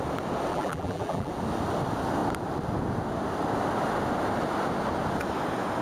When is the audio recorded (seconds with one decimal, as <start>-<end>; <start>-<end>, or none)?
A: 0.0-0.5; 1.3-5.8

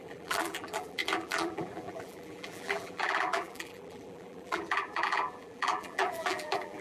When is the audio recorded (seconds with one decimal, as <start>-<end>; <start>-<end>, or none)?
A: none